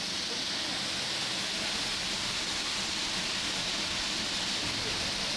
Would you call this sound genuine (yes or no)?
yes